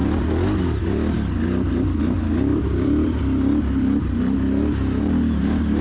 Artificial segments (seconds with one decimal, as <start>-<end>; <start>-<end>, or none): 2.5-5.0